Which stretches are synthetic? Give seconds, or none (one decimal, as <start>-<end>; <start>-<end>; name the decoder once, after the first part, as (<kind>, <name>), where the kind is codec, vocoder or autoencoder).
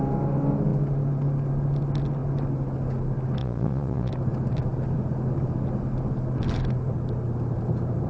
3.4-4.1 (vocoder, Vocos)